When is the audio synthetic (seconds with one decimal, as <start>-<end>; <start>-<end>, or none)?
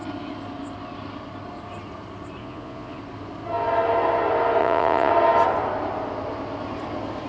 2.4-3.0; 4.6-5.1